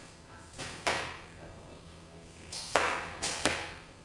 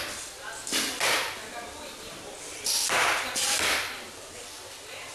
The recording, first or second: second